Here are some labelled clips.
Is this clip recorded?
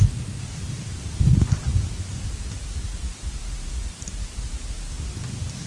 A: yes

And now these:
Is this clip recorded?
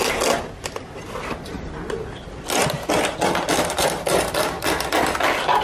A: yes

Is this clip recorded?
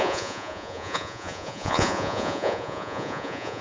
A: no